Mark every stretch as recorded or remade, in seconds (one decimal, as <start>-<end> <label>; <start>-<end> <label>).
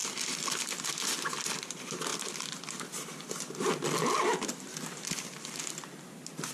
0.0-6.5 recorded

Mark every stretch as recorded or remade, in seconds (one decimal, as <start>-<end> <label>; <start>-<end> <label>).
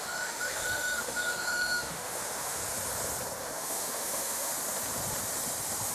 0.0-2.6 remade; 2.6-3.4 recorded; 3.4-4.5 remade; 4.5-5.9 recorded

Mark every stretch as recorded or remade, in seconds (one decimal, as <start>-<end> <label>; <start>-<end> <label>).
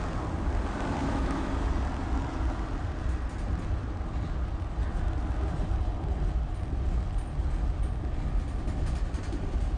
0.0-1.0 recorded; 1.0-1.5 remade; 1.5-9.8 recorded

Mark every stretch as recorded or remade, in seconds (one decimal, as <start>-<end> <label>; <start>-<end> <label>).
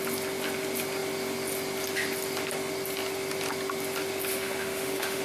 0.0-4.3 recorded; 4.3-5.2 remade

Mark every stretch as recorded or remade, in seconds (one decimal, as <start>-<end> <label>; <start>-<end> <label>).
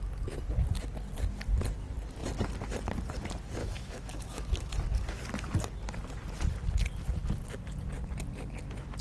0.0-3.6 recorded; 3.6-4.7 remade; 4.7-9.0 recorded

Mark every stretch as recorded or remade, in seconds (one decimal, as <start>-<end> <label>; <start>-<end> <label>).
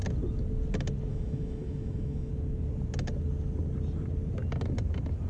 0.0-1.1 recorded; 1.1-2.3 remade; 2.3-5.3 recorded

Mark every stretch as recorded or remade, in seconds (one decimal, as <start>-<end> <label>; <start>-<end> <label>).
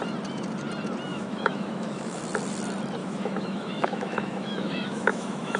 0.0-1.1 recorded; 1.1-2.2 remade; 2.2-3.0 recorded; 3.0-5.6 remade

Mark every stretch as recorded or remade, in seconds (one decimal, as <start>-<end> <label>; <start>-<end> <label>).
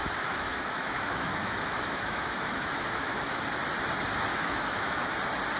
0.0-3.4 remade; 3.4-4.3 recorded; 4.3-5.1 remade; 5.1-5.6 recorded